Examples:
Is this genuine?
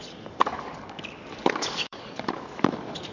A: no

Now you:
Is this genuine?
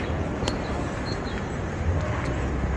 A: yes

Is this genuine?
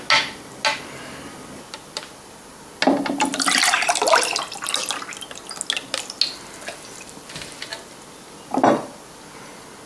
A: yes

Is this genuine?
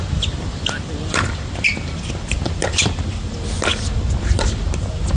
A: yes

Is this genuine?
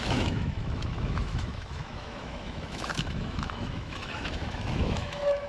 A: no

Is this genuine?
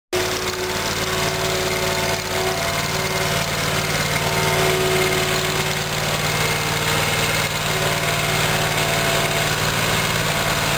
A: yes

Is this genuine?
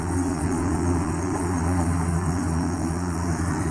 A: no